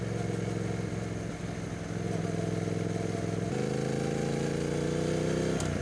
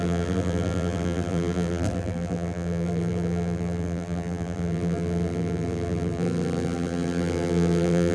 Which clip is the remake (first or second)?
second